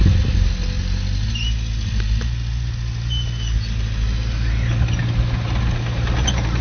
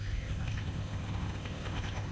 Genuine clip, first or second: first